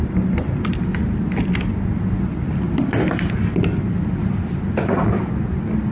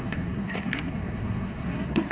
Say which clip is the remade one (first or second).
second